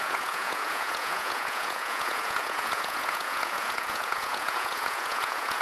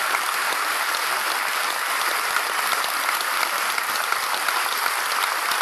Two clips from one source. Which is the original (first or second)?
second